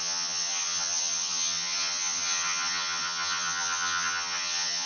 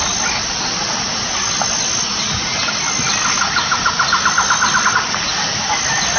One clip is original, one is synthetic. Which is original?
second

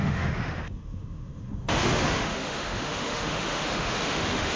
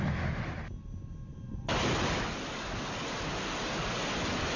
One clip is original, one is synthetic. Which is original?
second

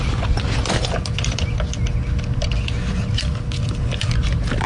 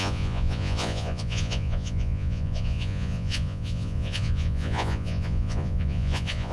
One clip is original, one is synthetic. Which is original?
first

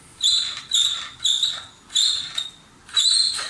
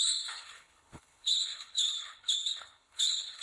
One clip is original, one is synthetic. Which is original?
first